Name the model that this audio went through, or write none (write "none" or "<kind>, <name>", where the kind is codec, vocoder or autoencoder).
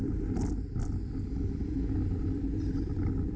none